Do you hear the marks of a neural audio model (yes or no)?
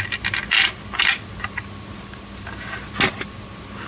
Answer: no